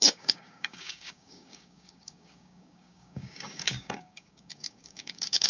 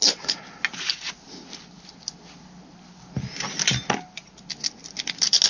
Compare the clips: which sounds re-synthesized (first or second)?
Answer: first